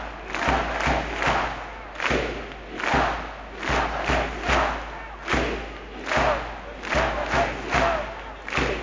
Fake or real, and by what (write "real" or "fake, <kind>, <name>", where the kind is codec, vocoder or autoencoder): real